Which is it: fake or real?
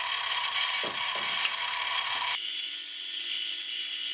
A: real